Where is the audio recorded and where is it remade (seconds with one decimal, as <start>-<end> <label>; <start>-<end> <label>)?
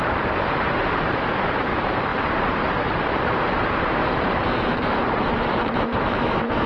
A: 0.0-4.4 remade; 4.4-5.0 recorded; 5.0-6.7 remade